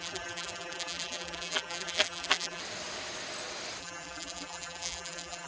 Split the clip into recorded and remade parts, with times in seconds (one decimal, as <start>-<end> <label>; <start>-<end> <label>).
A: 0.0-2.6 remade; 2.6-3.8 recorded; 3.8-5.5 remade